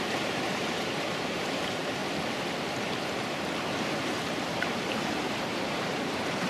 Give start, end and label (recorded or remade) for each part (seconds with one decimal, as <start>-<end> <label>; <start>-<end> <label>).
0.0-2.0 remade; 2.0-4.1 recorded; 4.1-6.5 remade